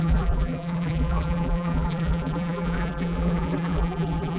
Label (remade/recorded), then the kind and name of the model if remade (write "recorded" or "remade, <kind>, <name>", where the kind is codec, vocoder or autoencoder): remade, vocoder, BigVGAN v2